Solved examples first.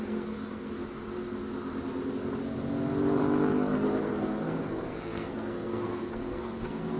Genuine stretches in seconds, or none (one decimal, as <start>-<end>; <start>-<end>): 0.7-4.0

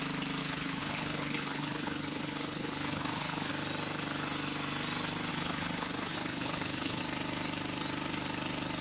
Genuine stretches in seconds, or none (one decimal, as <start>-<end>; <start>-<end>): 0.0-0.4; 3.5-5.3; 7.0-8.8

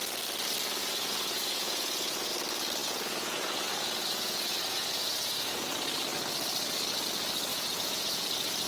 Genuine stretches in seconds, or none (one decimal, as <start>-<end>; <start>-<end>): 0.0-0.8; 2.3-2.8; 5.6-7.5; 8.2-8.7

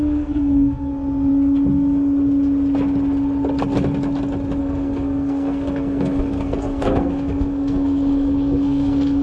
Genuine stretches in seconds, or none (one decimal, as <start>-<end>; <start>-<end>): 0.9-4.6

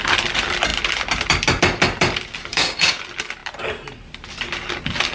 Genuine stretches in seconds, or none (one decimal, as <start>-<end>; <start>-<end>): 0.0-2.5; 3.0-5.1

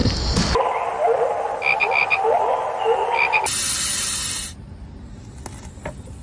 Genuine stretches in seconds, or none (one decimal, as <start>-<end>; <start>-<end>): 0.0-6.2

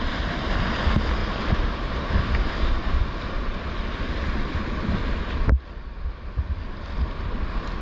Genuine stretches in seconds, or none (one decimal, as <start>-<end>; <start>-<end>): 0.0-7.8